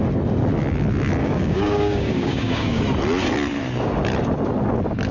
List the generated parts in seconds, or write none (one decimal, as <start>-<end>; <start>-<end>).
1.2-2.8